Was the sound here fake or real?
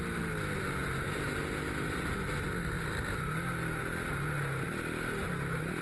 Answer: real